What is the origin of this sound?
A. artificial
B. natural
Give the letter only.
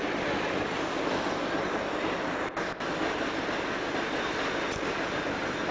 B